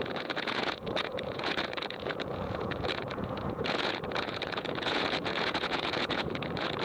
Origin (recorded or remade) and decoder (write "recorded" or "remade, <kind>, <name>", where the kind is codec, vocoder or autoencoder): remade, vocoder, Vocos